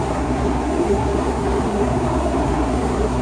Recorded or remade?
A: remade